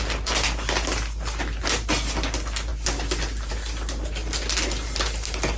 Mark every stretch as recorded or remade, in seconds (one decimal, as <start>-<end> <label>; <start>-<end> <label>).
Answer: 0.0-5.6 recorded